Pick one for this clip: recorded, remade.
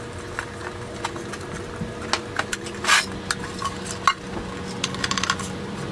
recorded